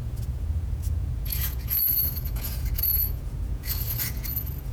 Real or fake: fake